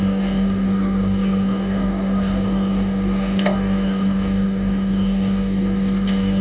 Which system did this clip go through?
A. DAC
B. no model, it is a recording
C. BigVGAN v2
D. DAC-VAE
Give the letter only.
A